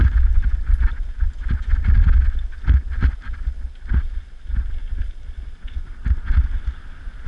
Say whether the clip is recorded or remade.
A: recorded